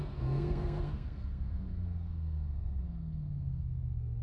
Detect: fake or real fake